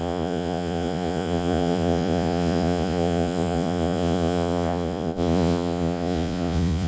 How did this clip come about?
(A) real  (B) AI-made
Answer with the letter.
B